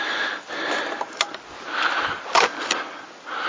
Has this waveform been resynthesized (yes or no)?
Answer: no